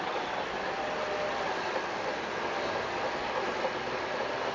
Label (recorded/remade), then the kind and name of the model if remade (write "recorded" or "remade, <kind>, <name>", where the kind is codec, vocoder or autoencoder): recorded